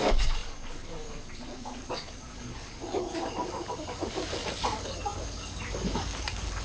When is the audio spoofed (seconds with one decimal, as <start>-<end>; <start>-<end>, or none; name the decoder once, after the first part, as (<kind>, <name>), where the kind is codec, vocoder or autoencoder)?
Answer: 0.0-6.6 (codec, DAC)